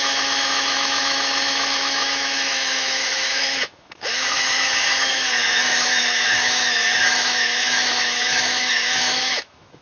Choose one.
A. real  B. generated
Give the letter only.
B